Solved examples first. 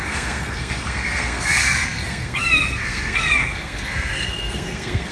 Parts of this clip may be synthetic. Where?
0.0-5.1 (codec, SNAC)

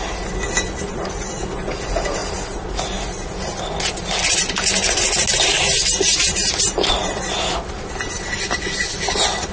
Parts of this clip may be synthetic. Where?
none

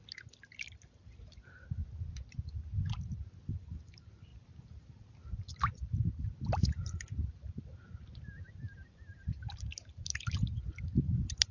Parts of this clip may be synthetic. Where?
0.0-1.8 (vocoder, BigVGAN v2); 3.5-4.3; 5.6-11.5

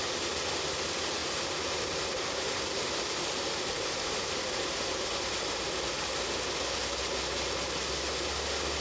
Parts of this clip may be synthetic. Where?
1.2-5.7 (vocoder, BigVGAN v2)

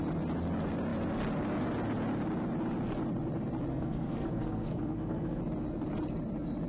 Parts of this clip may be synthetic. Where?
3.7-5.4 (codec, SNAC)

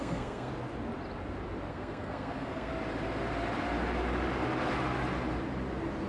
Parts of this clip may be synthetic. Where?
0.0-0.5 (codec, SNAC); 1.7-2.7

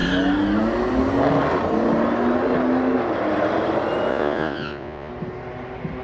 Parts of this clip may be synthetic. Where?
4.1-5.1 (vocoder, Vocos)